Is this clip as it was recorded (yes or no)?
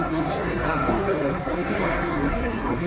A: no